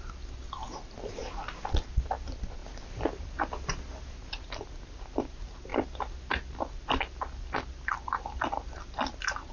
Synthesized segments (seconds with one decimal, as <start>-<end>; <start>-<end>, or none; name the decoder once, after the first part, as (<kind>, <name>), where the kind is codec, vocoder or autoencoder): none